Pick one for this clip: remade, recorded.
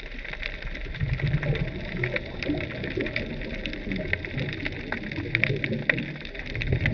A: recorded